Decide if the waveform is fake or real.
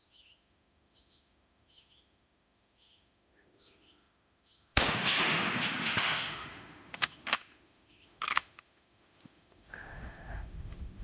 fake